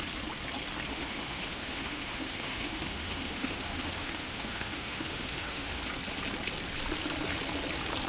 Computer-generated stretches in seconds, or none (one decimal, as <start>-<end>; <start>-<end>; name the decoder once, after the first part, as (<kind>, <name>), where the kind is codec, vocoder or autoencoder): 0.9-5.8 (autoencoder, DAC-VAE)